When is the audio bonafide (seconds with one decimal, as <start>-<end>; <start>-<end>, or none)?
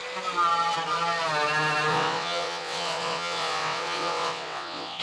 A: 0.0-1.9